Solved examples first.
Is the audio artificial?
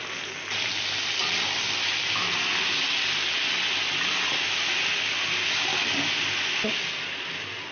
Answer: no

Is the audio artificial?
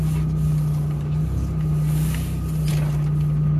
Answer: no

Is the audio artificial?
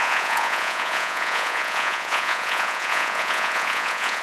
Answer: yes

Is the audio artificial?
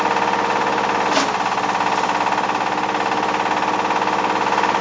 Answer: no